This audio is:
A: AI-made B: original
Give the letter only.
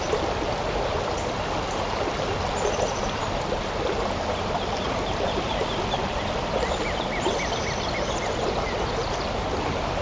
B